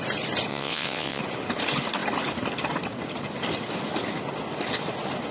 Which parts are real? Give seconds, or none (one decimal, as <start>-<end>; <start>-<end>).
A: 0.0-0.5; 1.2-5.3